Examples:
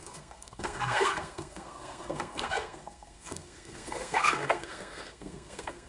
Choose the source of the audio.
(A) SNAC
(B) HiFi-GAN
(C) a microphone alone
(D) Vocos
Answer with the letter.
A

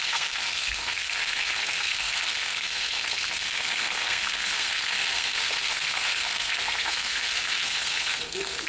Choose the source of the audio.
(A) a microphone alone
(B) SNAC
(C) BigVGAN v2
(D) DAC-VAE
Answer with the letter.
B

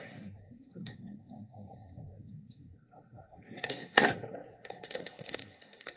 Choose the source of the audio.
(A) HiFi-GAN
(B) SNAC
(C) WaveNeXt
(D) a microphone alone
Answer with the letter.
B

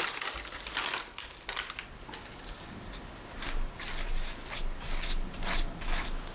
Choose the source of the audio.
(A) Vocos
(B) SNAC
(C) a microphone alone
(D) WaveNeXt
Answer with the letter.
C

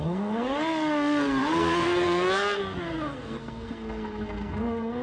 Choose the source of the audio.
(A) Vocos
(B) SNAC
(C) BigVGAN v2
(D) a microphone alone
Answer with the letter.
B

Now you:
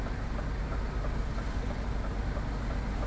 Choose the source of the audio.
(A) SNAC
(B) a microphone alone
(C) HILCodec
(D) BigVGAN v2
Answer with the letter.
B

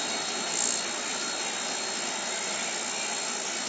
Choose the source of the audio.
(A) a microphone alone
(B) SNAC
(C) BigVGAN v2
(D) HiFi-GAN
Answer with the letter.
A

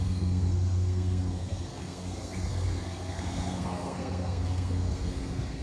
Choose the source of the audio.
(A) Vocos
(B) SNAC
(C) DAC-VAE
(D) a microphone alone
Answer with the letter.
B